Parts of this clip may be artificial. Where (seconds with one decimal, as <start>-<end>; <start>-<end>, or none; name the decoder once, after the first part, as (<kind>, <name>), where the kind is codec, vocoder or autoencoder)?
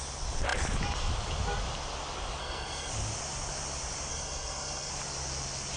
2.4-2.9 (codec, SNAC); 4.1-4.9